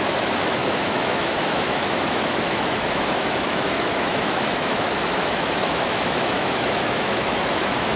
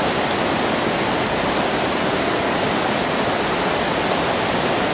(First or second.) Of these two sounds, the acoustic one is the second